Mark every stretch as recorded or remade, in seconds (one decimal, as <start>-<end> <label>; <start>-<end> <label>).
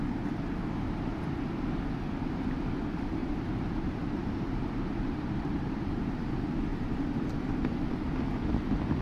0.0-3.2 recorded; 3.2-6.3 remade; 6.3-6.7 recorded; 6.7-7.9 remade; 7.9-9.0 recorded